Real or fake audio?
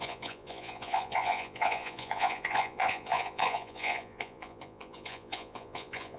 fake